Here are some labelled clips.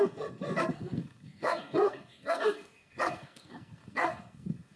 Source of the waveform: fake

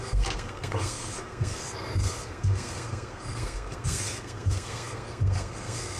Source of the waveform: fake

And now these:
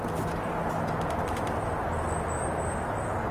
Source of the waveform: real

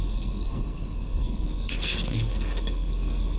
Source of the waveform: fake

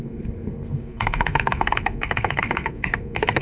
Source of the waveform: fake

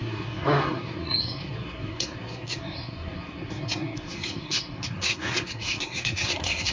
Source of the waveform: fake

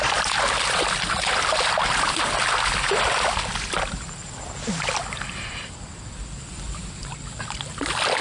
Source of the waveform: real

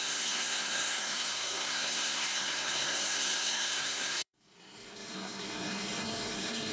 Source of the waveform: fake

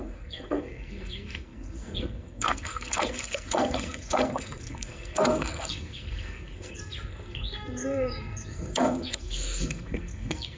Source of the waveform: fake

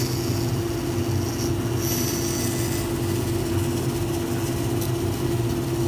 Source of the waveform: real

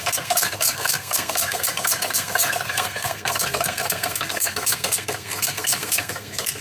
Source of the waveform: fake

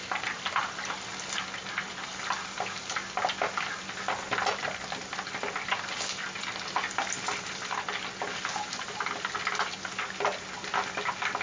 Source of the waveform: real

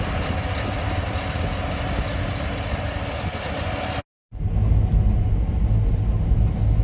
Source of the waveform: real